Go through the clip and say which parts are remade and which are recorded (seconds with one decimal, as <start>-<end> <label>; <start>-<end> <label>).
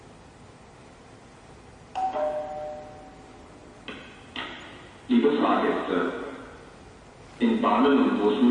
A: 0.0-5.6 recorded; 5.6-6.1 remade; 6.1-8.5 recorded